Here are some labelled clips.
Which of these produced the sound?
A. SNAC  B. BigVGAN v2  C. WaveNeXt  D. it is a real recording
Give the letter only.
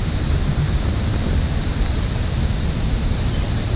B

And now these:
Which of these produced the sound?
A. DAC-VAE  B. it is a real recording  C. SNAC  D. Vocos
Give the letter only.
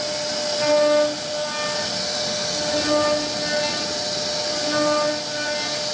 B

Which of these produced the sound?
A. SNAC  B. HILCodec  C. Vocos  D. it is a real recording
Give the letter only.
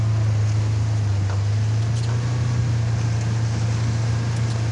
D